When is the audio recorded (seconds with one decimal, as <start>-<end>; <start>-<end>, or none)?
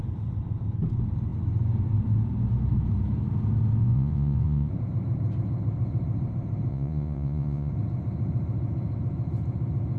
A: 0.0-3.8; 4.7-6.7; 7.7-10.0